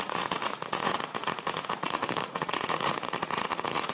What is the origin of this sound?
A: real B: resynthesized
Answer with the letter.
B